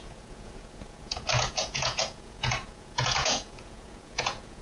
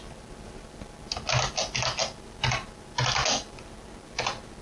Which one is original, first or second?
second